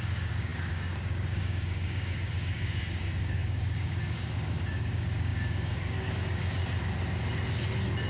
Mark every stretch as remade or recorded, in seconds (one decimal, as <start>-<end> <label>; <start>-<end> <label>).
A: 0.0-6.6 remade; 6.6-8.1 recorded